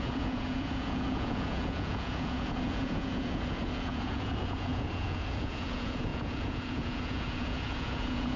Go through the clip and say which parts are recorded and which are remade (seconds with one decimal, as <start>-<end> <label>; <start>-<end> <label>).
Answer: 0.0-8.4 remade